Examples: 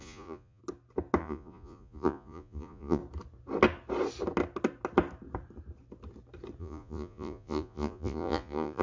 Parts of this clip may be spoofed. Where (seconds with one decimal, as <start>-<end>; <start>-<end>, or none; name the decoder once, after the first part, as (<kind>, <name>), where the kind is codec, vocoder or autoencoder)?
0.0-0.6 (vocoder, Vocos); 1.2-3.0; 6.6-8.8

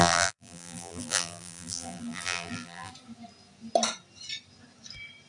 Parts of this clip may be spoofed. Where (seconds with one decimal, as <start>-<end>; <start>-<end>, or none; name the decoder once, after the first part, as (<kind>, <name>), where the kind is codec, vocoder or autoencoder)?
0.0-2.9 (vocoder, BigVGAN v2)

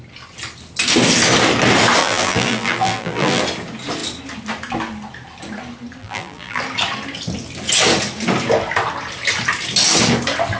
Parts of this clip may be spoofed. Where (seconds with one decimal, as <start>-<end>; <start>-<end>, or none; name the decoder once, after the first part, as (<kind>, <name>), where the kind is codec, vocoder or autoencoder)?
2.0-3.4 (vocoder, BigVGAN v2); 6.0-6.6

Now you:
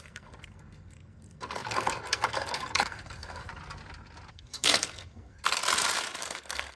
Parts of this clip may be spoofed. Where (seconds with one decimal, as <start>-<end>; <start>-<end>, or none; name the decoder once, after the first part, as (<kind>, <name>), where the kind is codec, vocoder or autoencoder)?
0.0-3.5 (codec, SNAC); 4.3-5.6; 6.2-6.8

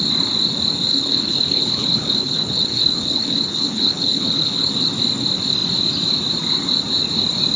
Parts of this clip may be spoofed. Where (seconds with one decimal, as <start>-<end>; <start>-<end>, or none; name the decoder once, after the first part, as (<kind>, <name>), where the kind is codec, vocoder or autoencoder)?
0.9-4.7 (codec, HILCodec)

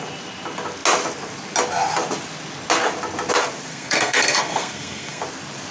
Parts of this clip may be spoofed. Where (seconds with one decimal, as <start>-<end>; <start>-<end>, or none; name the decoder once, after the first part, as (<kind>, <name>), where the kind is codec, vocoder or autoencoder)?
3.7-5.2 (codec, SNAC)